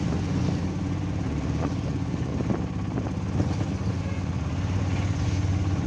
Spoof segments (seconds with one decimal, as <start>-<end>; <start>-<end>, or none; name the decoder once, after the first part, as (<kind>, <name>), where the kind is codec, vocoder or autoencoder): 0.0-2.3 (vocoder, Vocos); 3.9-5.9